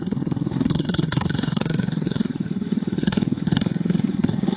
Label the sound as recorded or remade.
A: remade